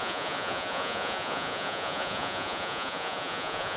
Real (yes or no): no